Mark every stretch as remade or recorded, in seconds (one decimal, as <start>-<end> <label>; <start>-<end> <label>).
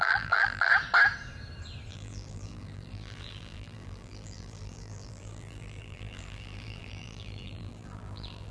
0.0-0.7 remade; 0.7-1.9 recorded; 1.9-8.5 remade